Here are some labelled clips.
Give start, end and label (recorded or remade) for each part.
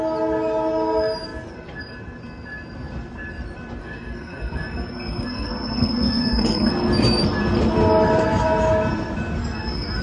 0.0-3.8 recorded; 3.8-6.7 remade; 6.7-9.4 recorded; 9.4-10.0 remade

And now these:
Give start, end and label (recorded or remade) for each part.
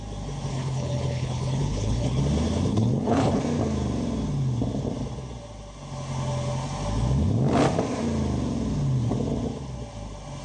0.0-0.5 recorded; 0.5-2.2 remade; 2.2-2.7 recorded; 2.7-3.4 remade; 3.4-10.4 recorded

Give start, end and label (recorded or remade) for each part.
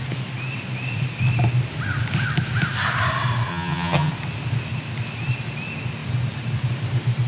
0.0-3.5 recorded; 3.5-4.1 remade; 4.1-7.3 recorded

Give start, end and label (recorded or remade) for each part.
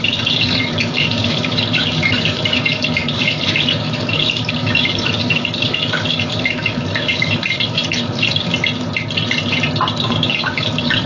0.0-8.5 remade; 8.5-10.3 recorded; 10.3-11.1 remade